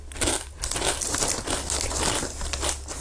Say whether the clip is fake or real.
real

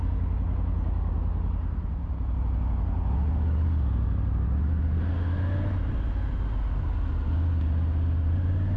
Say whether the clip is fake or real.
real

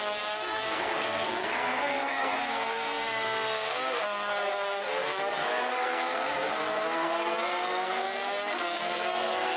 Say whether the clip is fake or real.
fake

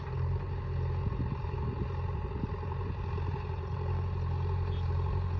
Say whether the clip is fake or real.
real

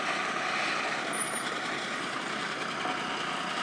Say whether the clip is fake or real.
real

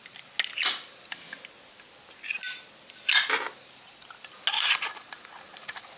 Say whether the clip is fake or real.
real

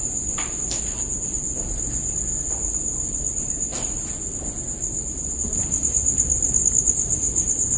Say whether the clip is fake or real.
real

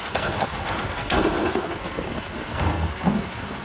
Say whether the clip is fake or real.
fake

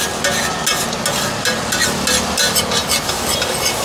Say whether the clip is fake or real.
real